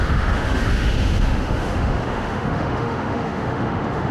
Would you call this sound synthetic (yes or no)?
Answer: yes